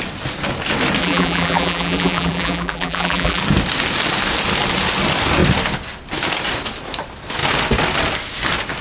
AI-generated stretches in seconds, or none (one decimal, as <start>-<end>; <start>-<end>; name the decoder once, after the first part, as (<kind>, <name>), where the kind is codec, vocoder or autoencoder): 1.0-3.4 (vocoder, BigVGAN v2)

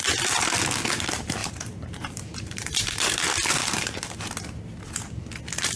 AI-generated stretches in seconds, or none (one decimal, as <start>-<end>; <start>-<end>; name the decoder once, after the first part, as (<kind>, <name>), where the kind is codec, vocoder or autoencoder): 1.4-3.2 (vocoder, BigVGAN v2); 3.6-4.2